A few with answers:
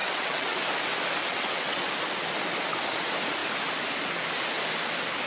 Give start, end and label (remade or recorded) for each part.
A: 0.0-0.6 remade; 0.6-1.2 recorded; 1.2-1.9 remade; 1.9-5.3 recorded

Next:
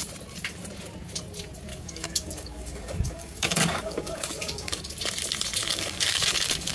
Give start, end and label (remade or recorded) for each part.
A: 0.0-1.7 recorded; 1.7-4.8 remade; 4.8-5.6 recorded; 5.6-6.7 remade